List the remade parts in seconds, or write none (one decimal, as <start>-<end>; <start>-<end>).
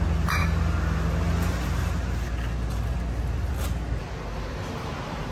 none